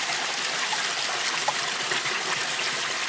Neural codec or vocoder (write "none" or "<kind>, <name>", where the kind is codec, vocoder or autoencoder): none